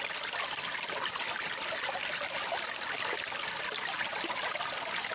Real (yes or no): yes